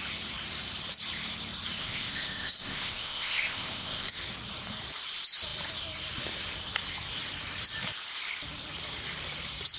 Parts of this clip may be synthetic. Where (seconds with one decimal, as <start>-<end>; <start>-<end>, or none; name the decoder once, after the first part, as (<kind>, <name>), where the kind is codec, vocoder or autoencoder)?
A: 1.8-4.1 (codec, ZipCodec)